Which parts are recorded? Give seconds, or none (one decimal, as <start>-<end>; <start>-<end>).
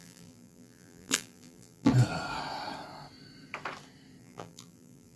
1.9-4.2